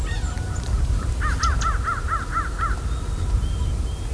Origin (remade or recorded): recorded